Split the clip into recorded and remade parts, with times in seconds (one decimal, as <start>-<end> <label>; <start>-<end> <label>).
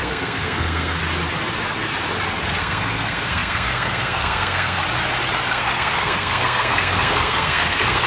0.0-1.0 remade; 1.0-2.6 recorded; 2.6-4.8 remade; 4.8-5.5 recorded; 5.5-8.1 remade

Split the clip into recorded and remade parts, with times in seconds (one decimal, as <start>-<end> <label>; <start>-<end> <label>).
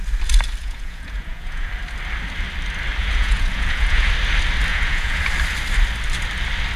0.0-0.6 recorded; 0.6-1.7 remade; 1.7-3.0 recorded; 3.0-4.1 remade; 4.1-4.7 recorded; 4.7-5.3 remade; 5.3-6.8 recorded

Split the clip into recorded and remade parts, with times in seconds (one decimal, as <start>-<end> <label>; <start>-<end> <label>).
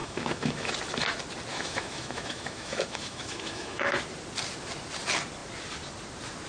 0.0-0.7 remade; 0.7-1.5 recorded; 1.5-3.9 remade; 3.9-6.5 recorded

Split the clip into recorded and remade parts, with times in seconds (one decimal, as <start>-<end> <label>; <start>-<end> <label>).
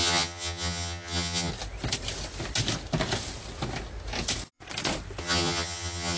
0.0-1.5 remade; 1.5-5.2 recorded; 5.2-6.2 remade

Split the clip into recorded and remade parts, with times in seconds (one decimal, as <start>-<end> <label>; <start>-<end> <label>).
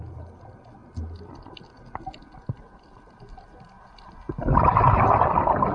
0.0-5.7 recorded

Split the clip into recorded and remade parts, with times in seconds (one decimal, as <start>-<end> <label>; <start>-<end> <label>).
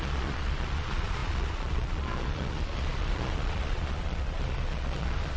0.0-5.4 remade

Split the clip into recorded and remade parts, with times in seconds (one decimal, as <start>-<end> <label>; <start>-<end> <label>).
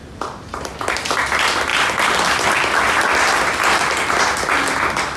0.0-0.6 remade; 0.6-5.2 recorded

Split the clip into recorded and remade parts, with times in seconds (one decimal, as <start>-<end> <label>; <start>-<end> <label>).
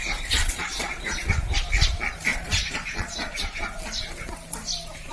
0.0-0.4 recorded; 0.4-1.4 remade; 1.4-2.3 recorded; 2.3-3.6 remade; 3.6-5.1 recorded